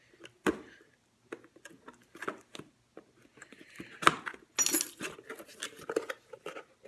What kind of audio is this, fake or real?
real